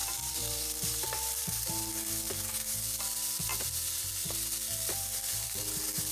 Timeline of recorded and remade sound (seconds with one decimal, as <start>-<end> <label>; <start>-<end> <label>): 0.0-1.9 remade; 1.9-3.5 recorded; 3.5-4.1 remade; 4.1-4.7 recorded; 4.7-5.6 remade; 5.6-6.1 recorded